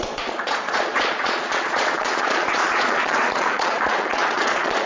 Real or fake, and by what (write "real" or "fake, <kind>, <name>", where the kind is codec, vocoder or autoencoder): fake, vocoder, Vocos